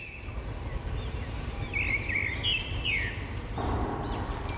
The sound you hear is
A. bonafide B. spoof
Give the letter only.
A